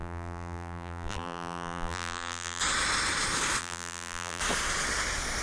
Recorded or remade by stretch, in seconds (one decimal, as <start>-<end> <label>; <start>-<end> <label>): 0.0-2.6 remade; 2.6-3.6 recorded; 3.6-4.4 remade; 4.4-5.4 recorded